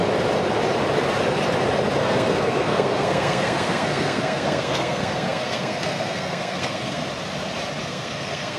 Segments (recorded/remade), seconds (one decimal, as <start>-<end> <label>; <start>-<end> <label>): 0.0-2.0 recorded; 2.0-7.0 remade; 7.0-7.8 recorded; 7.8-8.6 remade